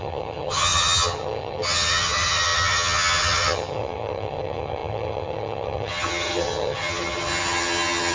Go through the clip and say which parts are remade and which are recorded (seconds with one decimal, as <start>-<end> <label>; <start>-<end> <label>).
0.0-8.1 remade